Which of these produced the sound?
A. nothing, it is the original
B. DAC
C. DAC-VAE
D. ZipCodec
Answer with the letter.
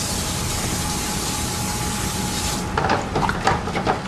A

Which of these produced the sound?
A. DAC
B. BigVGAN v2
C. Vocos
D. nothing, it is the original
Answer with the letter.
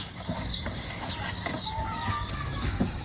A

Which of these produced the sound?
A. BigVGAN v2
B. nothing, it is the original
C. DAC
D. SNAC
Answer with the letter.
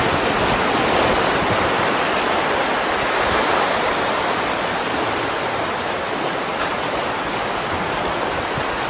B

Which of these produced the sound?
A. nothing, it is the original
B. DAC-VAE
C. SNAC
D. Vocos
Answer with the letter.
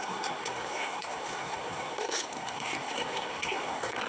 C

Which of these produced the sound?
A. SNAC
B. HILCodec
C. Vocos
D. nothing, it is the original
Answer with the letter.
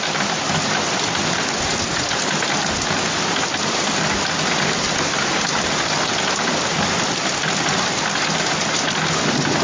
D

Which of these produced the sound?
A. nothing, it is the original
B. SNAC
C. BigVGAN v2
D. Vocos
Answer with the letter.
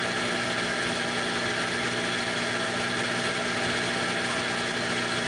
A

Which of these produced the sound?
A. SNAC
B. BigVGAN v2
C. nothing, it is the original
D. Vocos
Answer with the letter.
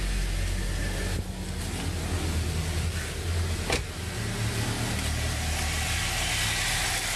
C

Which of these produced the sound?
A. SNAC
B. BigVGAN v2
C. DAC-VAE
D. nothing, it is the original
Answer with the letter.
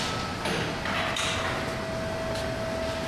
D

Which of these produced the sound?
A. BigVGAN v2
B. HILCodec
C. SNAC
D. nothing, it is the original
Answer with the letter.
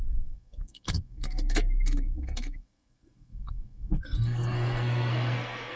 C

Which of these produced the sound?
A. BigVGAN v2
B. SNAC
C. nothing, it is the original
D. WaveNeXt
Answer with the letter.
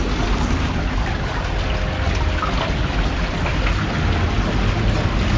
C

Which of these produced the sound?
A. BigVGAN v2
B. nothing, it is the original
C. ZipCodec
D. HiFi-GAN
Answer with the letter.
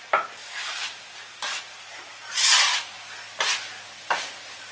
B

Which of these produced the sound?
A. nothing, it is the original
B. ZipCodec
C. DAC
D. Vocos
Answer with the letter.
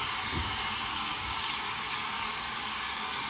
C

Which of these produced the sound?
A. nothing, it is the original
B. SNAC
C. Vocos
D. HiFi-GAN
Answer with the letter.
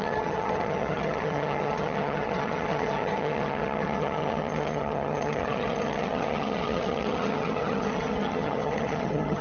D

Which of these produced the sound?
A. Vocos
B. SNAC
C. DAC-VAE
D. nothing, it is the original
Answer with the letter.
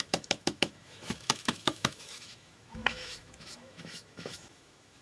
C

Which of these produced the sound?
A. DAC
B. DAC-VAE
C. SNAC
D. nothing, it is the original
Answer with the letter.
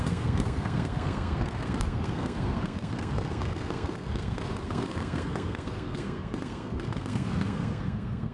C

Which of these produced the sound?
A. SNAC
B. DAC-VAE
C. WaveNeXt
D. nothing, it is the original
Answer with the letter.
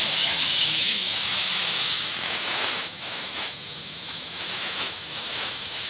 B